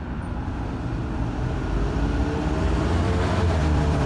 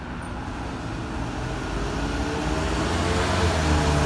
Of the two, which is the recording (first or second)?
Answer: second